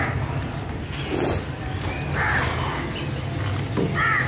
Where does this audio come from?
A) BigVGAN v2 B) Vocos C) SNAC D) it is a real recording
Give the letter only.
D